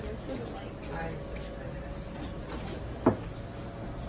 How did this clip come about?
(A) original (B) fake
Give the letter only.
A